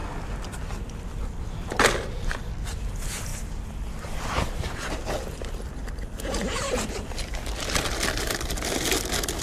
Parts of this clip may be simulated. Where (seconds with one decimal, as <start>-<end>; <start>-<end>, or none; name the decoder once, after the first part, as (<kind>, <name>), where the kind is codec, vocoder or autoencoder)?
none